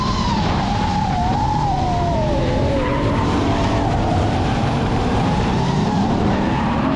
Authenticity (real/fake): fake